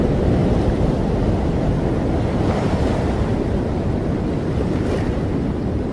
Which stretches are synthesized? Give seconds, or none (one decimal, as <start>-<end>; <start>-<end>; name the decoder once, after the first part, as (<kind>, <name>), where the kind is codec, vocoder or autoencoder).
none